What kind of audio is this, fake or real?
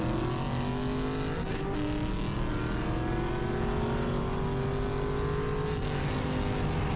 real